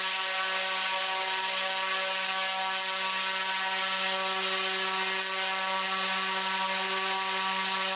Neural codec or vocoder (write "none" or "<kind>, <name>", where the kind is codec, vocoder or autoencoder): none